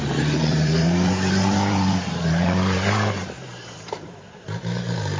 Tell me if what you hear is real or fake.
fake